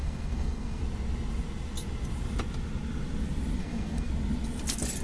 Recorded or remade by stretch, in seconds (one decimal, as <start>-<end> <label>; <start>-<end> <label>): 0.0-0.8 remade; 0.8-3.6 recorded; 3.6-4.1 remade; 4.1-5.0 recorded